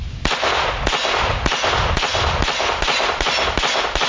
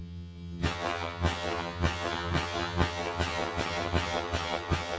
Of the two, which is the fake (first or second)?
second